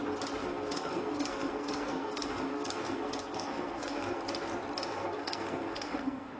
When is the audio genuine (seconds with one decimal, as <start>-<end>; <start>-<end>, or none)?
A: 0.0-0.4; 4.2-4.9